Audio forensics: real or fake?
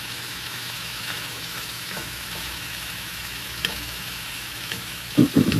fake